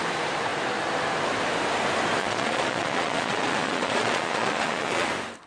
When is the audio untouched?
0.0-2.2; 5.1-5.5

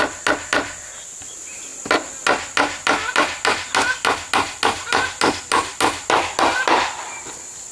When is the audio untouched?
0.0-7.7